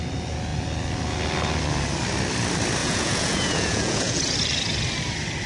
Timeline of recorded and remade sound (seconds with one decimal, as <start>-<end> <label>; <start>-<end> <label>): 0.0-2.8 recorded; 2.8-4.2 remade; 4.2-5.5 recorded